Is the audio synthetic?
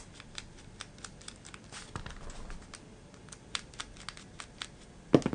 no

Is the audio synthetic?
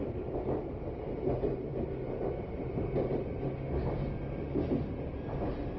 no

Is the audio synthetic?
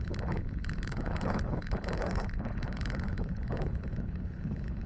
yes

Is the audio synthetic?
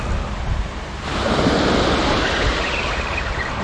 no